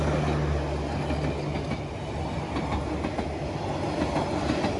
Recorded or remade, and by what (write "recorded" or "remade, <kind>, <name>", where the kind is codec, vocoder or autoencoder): recorded